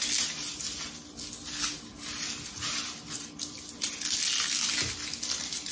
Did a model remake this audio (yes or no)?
no